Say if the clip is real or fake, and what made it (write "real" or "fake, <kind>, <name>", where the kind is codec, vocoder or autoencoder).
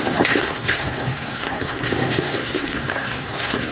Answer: fake, codec, SNAC